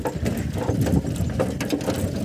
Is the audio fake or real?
real